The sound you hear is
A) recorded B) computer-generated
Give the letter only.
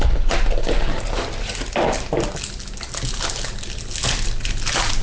A